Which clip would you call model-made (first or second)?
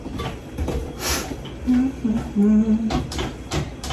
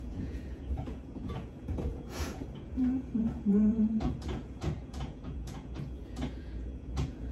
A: second